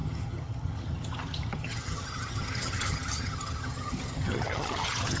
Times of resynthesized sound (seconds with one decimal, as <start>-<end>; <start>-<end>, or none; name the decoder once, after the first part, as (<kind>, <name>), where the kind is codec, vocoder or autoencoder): 0.0-5.2 (vocoder, HiFi-GAN)